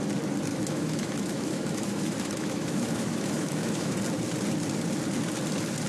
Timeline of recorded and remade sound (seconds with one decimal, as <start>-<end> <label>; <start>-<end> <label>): 0.0-0.5 recorded; 0.5-4.0 remade; 4.0-5.9 recorded